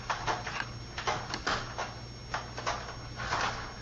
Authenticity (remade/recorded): recorded